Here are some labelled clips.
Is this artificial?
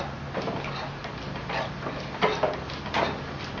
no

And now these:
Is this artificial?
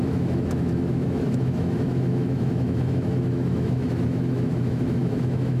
yes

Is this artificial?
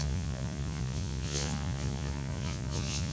yes